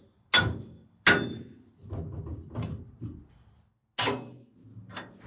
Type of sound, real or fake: real